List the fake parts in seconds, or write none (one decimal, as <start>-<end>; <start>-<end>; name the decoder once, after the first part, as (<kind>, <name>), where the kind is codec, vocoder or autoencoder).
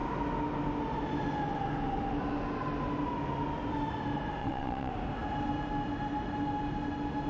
4.4-4.9 (vocoder, Vocos)